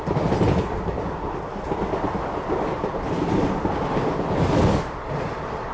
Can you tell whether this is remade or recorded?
recorded